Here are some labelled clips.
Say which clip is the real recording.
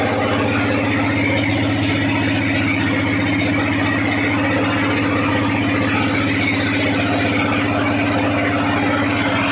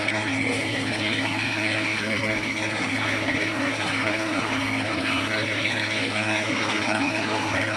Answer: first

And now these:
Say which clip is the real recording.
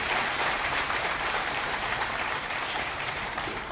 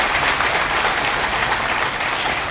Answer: second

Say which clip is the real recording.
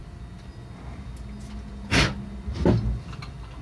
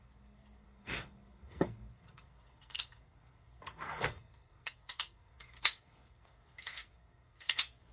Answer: first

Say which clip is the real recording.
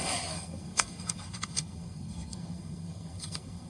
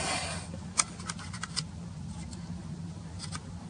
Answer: second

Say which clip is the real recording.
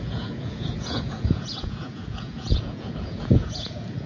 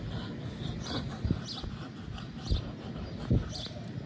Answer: second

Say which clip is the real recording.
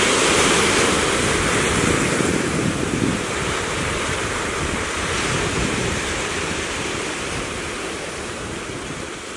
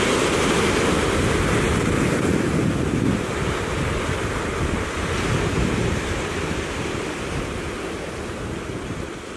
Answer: second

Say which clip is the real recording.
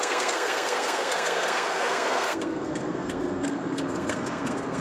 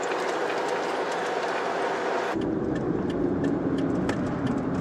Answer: second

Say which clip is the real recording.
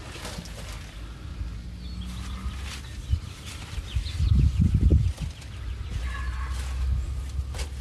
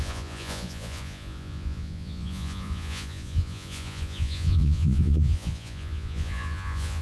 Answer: first